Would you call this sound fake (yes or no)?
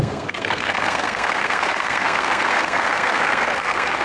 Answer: yes